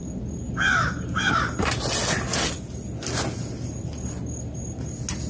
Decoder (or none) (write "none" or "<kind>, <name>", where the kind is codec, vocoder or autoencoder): none